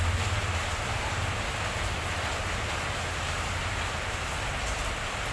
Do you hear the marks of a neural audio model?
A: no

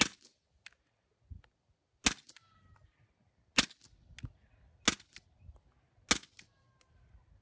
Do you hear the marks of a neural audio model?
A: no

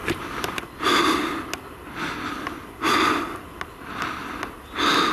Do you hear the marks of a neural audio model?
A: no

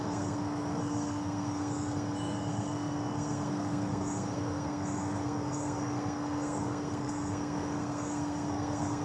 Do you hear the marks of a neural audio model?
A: yes